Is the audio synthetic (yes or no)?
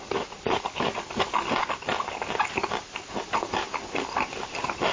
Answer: no